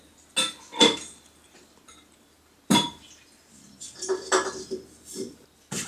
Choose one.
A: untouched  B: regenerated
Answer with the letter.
A